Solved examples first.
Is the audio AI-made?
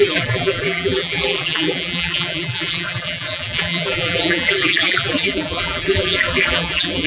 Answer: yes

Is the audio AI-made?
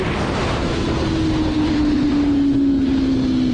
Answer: no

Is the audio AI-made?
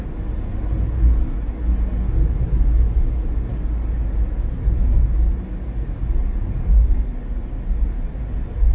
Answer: no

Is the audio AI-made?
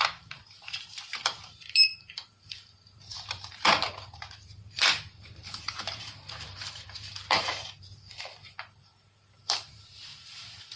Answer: yes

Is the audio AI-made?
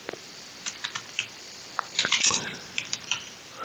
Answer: yes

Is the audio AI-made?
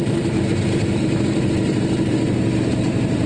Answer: yes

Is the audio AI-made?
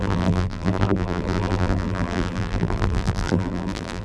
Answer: yes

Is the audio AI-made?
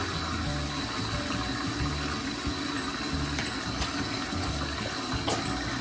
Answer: no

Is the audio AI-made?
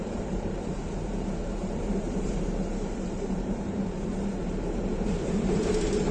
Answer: yes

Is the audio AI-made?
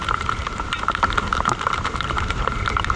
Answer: yes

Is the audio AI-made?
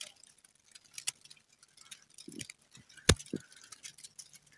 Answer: no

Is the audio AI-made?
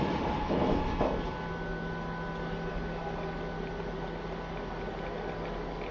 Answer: no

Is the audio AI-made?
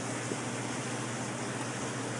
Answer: no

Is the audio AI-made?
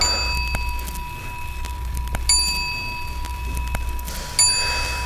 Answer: no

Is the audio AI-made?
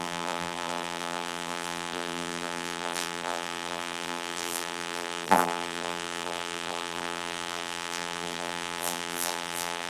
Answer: yes